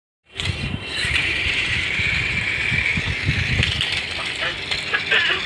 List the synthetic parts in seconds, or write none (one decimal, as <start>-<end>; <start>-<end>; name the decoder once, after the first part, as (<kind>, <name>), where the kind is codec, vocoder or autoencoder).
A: 0.0-3.1 (vocoder, BigVGAN v2)